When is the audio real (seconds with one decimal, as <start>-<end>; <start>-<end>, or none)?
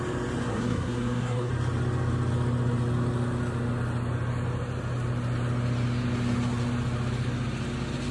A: 0.0-0.5; 1.5-8.1